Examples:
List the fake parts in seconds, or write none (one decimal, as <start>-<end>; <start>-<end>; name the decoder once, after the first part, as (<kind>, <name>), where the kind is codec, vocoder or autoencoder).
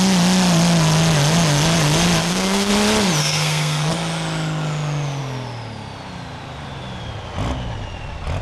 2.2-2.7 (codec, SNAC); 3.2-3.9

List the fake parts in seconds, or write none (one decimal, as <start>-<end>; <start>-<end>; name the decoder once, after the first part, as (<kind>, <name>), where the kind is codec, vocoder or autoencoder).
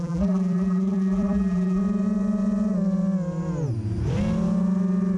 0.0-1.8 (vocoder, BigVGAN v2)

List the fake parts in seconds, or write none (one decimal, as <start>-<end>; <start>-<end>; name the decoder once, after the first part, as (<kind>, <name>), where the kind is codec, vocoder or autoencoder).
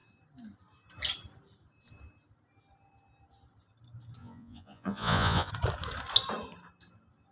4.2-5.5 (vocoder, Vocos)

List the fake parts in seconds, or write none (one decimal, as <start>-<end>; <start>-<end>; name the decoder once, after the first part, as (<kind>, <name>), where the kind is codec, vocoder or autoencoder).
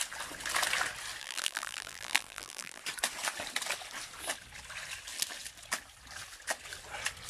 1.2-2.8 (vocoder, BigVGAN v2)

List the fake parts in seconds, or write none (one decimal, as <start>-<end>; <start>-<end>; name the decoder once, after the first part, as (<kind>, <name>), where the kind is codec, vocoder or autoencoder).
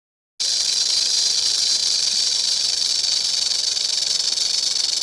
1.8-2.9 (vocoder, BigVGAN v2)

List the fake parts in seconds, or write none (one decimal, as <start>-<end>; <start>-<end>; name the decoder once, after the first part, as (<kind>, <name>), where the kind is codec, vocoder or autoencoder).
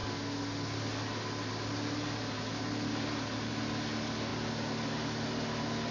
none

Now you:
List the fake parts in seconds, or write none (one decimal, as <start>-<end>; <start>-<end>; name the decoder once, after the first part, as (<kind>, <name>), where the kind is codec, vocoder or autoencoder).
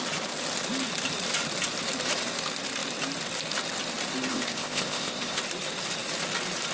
4.3-5.4 (codec, ZipCodec)